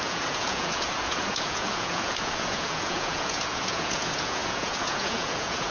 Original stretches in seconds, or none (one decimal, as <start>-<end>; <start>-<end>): none